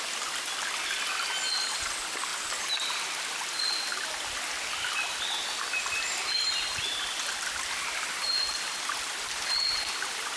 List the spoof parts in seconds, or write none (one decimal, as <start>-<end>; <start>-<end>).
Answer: none